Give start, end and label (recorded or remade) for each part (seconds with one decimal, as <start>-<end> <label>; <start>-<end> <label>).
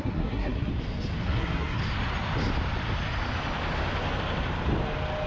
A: 0.0-0.7 remade; 0.7-1.2 recorded; 1.2-1.8 remade; 1.8-5.3 recorded